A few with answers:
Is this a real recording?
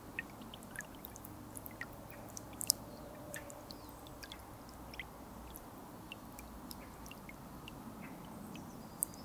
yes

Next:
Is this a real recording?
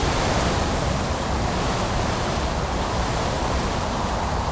no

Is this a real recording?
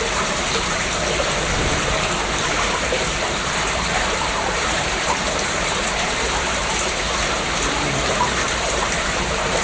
no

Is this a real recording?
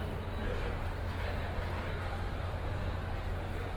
yes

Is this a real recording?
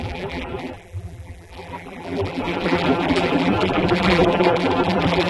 no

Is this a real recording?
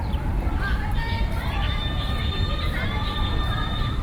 no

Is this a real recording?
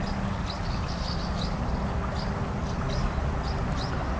yes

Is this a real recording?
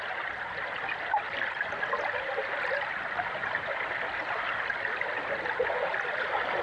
yes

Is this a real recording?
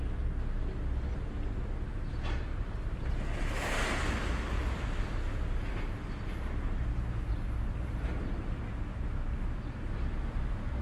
yes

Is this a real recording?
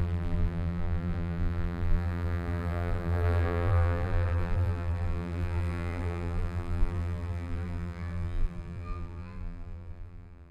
no